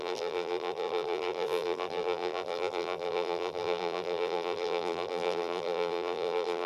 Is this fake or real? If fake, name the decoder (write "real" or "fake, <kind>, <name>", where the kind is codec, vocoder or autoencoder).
fake, vocoder, BigVGAN v2